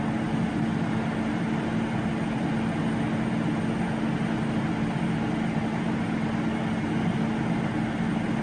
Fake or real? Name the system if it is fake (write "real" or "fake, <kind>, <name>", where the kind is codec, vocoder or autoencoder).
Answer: real